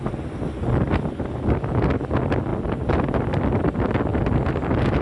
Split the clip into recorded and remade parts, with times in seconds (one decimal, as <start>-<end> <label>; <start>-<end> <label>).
0.0-5.0 recorded